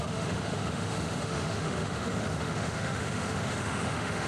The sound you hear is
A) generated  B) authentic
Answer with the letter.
A